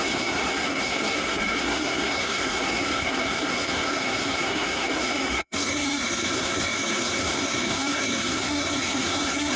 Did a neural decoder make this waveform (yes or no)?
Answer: yes